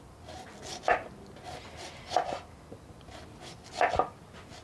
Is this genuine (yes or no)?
yes